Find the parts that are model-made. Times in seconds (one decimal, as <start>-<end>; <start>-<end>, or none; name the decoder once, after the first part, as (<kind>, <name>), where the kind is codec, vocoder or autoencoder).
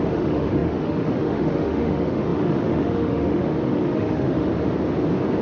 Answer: 0.0-4.5 (autoencoder, DAC-VAE)